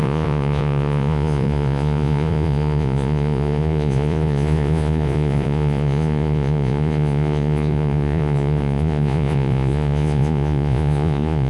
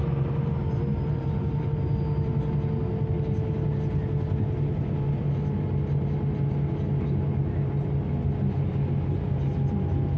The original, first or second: second